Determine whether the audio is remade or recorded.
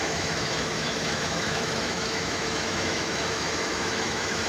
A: remade